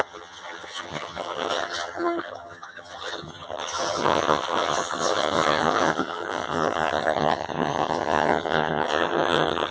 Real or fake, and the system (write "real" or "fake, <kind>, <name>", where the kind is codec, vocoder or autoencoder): fake, vocoder, HiFi-GAN